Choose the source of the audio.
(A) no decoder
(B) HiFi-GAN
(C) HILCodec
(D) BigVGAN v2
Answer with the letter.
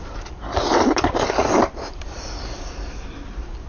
D